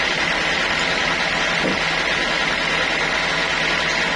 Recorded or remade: recorded